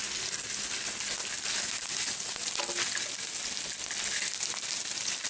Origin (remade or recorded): recorded